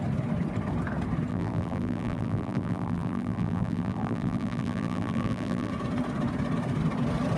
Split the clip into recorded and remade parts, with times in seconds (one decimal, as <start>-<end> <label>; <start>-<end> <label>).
0.0-1.3 recorded; 1.3-5.7 remade; 5.7-7.4 recorded